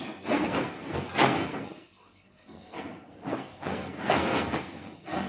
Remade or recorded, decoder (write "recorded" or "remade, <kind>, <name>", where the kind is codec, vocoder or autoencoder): remade, codec, SNAC